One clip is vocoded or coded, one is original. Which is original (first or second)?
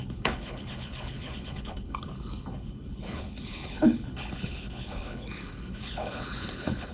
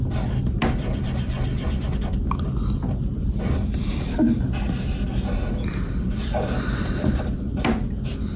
second